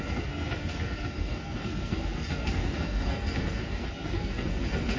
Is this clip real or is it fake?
fake